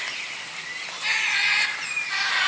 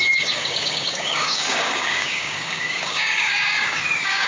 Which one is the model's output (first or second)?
second